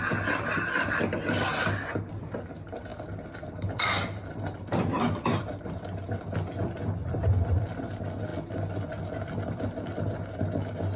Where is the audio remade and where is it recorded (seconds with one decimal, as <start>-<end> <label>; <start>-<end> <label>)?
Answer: 0.0-11.0 recorded